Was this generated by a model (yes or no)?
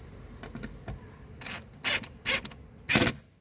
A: no